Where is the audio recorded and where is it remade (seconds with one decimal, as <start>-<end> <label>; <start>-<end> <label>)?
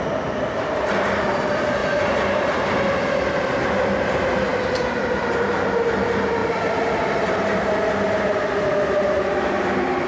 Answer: 0.0-10.1 recorded